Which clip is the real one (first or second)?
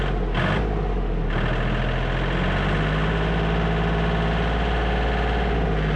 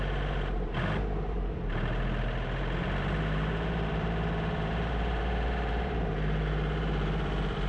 first